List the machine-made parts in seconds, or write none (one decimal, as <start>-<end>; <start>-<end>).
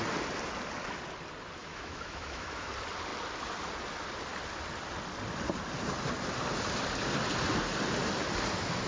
1.6-2.7